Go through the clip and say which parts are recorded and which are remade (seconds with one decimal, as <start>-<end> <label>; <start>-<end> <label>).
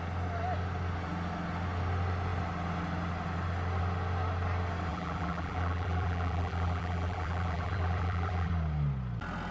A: 0.0-4.9 recorded; 4.9-8.5 remade; 8.5-9.5 recorded